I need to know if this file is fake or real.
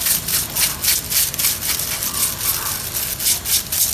real